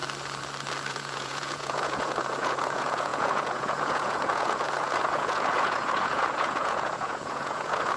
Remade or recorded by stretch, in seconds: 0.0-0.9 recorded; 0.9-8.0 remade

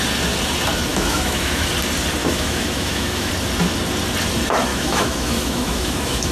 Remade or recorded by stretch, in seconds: 0.0-0.9 recorded; 0.9-1.7 remade; 1.7-2.2 recorded; 2.2-3.3 remade; 3.3-4.7 recorded; 4.7-6.3 remade

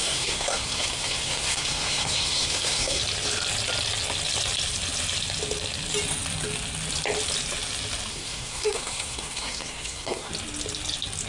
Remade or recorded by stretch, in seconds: 0.0-3.0 remade; 3.0-8.1 recorded; 8.1-10.3 remade; 10.3-11.3 recorded

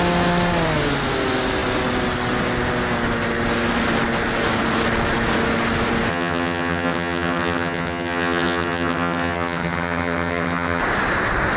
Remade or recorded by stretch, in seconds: 0.0-6.1 recorded; 6.1-10.8 remade; 10.8-11.6 recorded

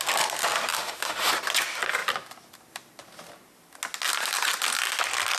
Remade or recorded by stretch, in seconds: 0.0-0.7 recorded; 0.7-1.3 remade; 1.3-5.4 recorded

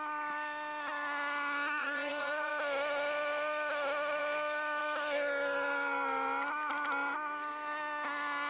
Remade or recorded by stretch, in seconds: 0.0-1.8 recorded; 1.8-2.5 remade; 2.5-8.5 recorded

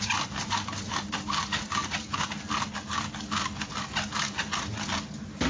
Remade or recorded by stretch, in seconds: 0.0-5.5 recorded

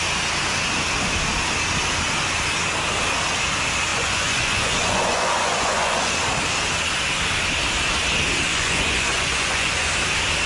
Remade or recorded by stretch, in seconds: 0.0-3.9 recorded; 3.9-6.1 remade; 6.1-8.5 recorded; 8.5-9.9 remade; 9.9-10.5 recorded